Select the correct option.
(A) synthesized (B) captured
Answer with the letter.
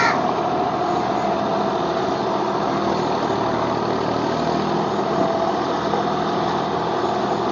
B